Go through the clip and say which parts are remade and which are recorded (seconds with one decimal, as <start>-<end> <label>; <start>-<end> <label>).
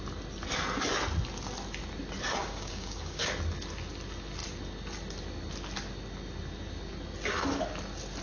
0.0-2.4 recorded; 2.4-3.3 remade; 3.3-8.2 recorded